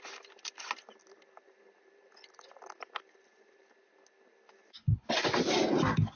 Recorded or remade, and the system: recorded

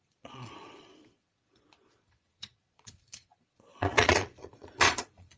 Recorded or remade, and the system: remade, vocoder, Vocos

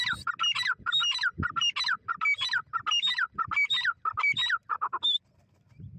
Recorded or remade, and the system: recorded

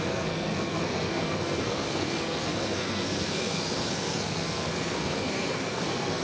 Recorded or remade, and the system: remade, codec, SNAC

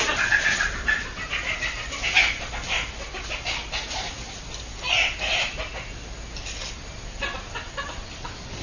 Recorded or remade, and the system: recorded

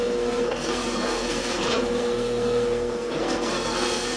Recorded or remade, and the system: remade, codec, SNAC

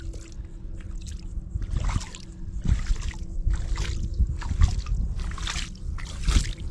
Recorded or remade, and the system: recorded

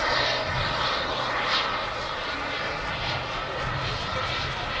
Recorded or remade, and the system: recorded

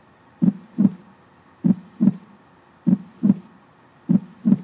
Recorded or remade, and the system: remade, vocoder, BigVGAN v2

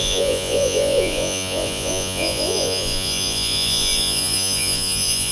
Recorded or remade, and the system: remade, vocoder, Vocos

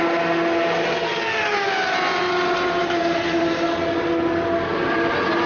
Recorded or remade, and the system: recorded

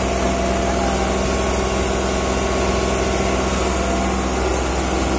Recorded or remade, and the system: recorded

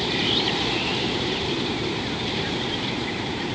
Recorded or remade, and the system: remade, vocoder, BigVGAN v2